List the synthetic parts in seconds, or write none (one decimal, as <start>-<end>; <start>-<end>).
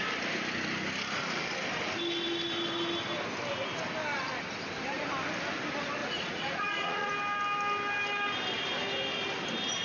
6.0-7.1